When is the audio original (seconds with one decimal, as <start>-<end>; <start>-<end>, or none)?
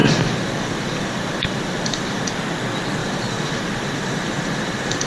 2.3-3.0